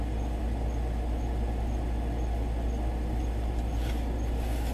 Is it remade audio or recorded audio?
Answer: recorded